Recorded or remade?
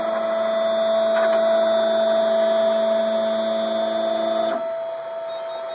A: recorded